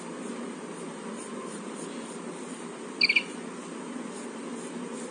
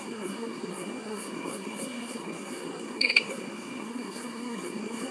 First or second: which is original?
first